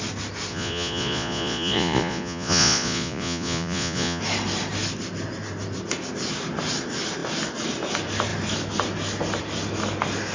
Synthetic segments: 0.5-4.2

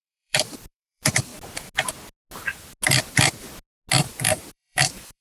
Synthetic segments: 0.0-1.3; 4.2-5.2

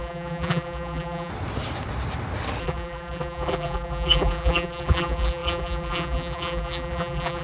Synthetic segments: 0.0-1.3; 2.6-7.4

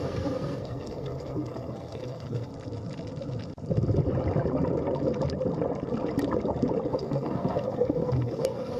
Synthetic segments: 0.0-2.5; 6.9-8.8

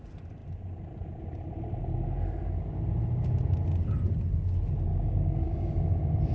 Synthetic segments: 4.9-5.7

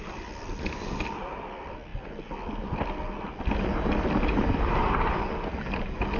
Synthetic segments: none